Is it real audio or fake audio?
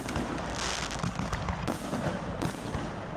real